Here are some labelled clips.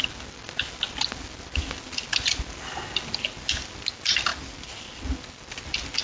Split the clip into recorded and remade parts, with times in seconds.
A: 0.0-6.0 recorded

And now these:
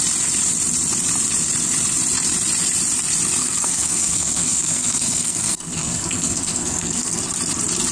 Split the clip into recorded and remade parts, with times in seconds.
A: 0.0-3.4 recorded; 3.4-7.2 remade; 7.2-7.9 recorded

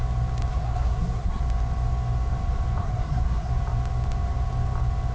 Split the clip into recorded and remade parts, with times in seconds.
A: 0.0-0.5 recorded; 0.5-1.4 remade; 1.4-2.8 recorded; 2.8-3.5 remade; 3.5-5.1 recorded